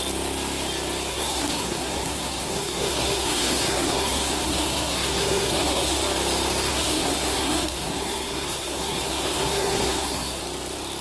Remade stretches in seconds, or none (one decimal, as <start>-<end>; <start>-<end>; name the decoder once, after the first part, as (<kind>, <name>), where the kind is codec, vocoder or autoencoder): 1.1-6.0 (codec, SNAC); 6.7-10.4